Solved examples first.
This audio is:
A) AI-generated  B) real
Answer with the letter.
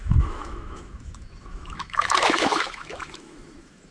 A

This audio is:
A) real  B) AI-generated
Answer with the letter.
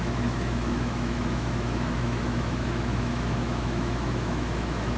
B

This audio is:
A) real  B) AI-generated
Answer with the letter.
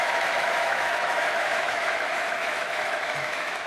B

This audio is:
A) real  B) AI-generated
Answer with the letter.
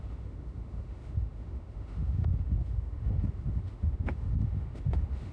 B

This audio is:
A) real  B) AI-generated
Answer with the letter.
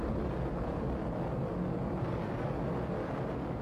A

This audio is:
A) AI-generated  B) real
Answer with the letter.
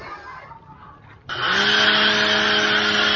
B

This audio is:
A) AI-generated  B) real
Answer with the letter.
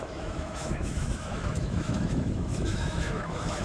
A